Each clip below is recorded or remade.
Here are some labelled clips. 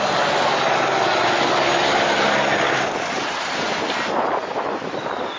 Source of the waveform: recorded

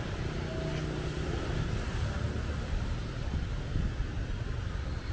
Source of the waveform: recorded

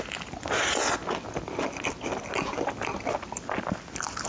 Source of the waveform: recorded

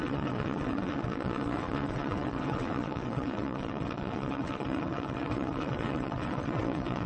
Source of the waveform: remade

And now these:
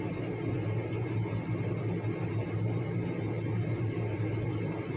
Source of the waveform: recorded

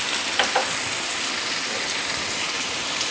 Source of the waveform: recorded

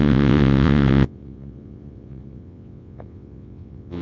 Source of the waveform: remade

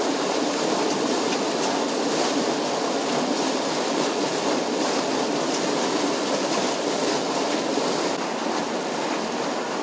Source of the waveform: recorded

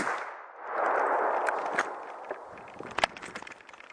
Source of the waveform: recorded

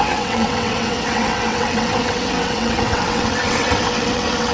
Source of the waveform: remade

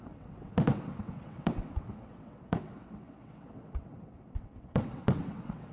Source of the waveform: remade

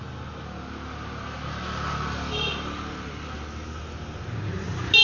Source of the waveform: recorded